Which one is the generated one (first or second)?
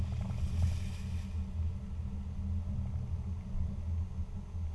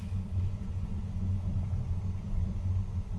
second